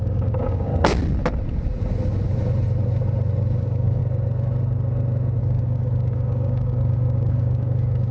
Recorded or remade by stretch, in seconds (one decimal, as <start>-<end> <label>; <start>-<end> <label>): 0.0-0.7 remade; 0.7-3.6 recorded; 3.6-4.0 remade; 4.0-5.4 recorded; 5.4-8.1 remade